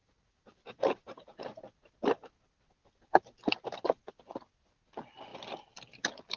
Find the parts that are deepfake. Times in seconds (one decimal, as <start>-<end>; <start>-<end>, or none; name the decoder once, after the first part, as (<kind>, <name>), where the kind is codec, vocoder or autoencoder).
0.0-1.6 (vocoder, BigVGAN v2); 2.8-4.1